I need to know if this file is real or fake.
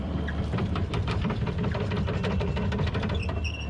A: fake